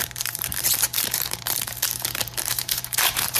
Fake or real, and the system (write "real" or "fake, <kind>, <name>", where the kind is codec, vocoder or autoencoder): fake, vocoder, BigVGAN v2